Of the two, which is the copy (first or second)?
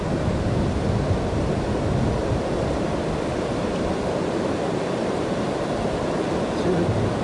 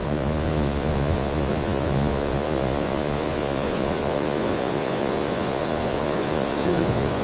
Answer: second